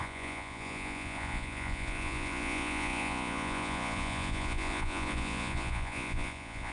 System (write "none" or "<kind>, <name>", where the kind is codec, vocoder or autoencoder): vocoder, Vocos